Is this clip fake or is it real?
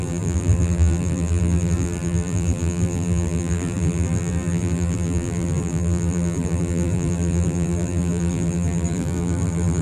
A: fake